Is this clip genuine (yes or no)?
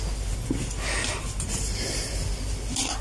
yes